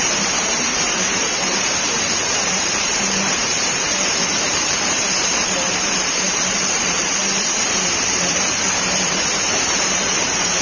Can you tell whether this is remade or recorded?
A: remade